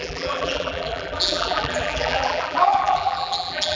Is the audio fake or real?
fake